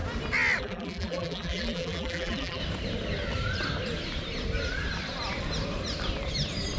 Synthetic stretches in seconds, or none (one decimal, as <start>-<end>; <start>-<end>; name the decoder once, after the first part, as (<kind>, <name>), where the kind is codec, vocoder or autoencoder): 0.6-2.6 (vocoder, BigVGAN v2)